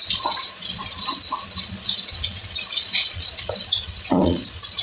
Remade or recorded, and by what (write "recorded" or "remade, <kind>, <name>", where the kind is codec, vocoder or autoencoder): remade, vocoder, Vocos